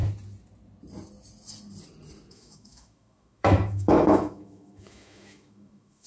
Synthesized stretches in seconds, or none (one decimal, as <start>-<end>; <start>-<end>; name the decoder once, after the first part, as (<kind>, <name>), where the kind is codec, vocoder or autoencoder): 2.3-6.1 (autoencoder, DAC-VAE)